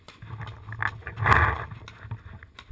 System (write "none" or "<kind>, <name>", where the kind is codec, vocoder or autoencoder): none